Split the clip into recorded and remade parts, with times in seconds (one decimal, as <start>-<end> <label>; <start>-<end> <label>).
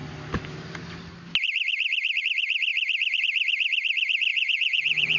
0.0-4.3 recorded; 4.3-5.2 remade